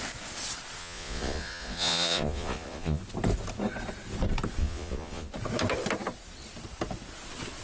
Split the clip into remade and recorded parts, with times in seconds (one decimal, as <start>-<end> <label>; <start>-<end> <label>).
0.0-0.8 recorded; 0.8-3.0 remade; 3.0-4.6 recorded; 4.6-5.3 remade; 5.3-7.6 recorded